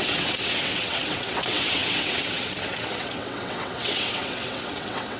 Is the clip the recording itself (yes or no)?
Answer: no